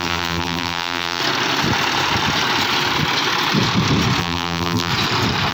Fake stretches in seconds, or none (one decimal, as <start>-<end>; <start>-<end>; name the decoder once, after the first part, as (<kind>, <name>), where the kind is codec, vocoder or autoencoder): 0.0-1.2 (vocoder, BigVGAN v2); 4.2-4.9